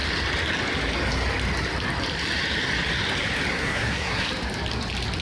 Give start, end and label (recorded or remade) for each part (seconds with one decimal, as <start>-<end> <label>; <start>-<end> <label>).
0.0-3.5 recorded; 3.5-4.3 remade; 4.3-5.2 recorded